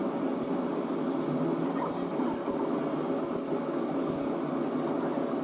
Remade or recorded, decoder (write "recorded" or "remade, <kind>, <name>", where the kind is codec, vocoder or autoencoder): recorded